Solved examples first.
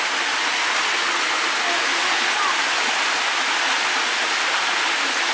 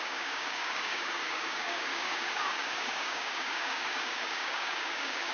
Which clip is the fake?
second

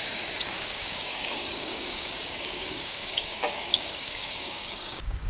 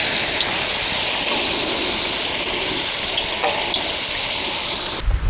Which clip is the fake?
first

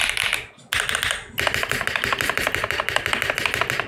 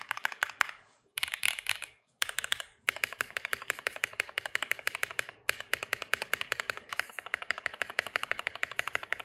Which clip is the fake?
second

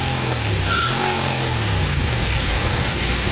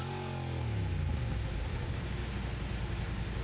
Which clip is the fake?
first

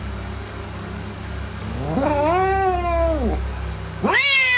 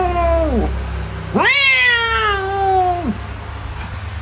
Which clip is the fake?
first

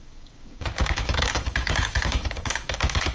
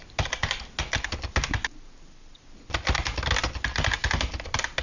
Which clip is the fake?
first